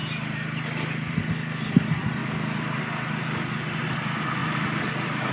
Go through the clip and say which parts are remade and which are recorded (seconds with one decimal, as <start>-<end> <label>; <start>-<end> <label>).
0.0-5.3 recorded